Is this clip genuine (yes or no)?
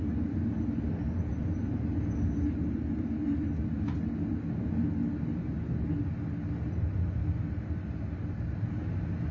yes